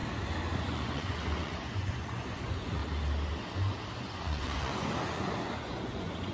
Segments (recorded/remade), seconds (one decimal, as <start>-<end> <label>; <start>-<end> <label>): 0.0-0.6 recorded; 0.6-2.8 remade; 2.8-4.0 recorded; 4.0-6.3 remade